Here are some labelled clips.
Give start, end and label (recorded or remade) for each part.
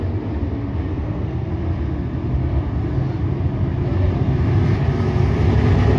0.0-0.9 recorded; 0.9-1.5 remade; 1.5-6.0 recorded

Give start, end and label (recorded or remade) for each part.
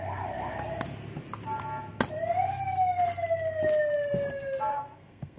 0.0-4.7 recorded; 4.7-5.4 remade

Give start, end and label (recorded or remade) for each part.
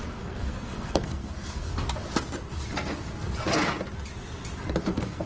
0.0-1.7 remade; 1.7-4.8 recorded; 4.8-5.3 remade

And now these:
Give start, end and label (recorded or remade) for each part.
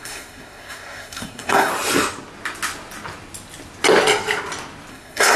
0.0-1.7 remade; 1.7-4.9 recorded; 4.9-5.4 remade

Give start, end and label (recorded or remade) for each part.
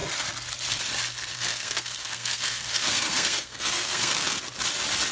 0.0-1.3 recorded; 1.3-4.4 remade; 4.4-5.1 recorded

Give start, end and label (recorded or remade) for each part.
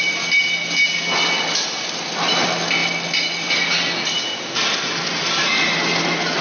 0.0-6.4 recorded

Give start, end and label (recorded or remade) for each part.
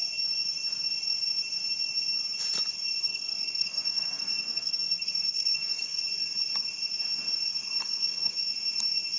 0.0-3.0 recorded; 3.0-6.0 remade; 6.0-7.8 recorded; 7.8-8.4 remade; 8.4-9.2 recorded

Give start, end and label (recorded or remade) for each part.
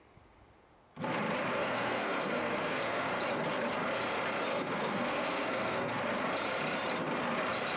0.0-1.6 recorded; 1.6-3.1 remade; 3.1-4.5 recorded; 4.5-6.0 remade; 6.0-7.8 recorded